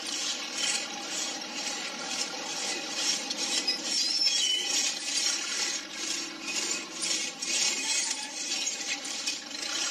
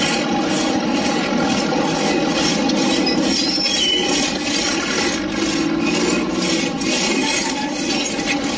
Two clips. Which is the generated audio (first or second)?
first